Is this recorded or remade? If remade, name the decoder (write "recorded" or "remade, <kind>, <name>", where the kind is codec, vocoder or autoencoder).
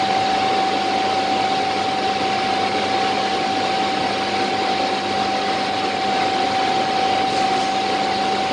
recorded